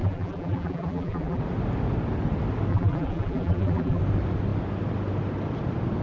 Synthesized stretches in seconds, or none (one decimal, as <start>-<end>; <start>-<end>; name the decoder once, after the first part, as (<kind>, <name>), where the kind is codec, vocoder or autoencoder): 0.0-1.4 (vocoder, BigVGAN v2); 2.7-4.0

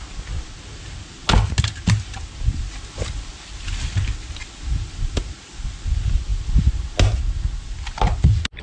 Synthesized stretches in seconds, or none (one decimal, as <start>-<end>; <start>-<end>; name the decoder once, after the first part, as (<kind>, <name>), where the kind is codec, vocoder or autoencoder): none

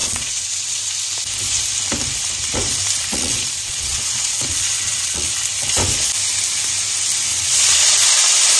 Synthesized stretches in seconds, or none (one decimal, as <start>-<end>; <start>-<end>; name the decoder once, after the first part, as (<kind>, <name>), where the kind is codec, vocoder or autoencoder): 0.0-1.0 (vocoder, Vocos); 3.1-5.3; 7.3-7.9

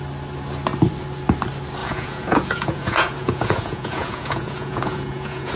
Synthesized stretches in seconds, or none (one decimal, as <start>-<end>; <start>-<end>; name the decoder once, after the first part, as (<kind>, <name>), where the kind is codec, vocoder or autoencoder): 1.8-5.6 (vocoder, Vocos)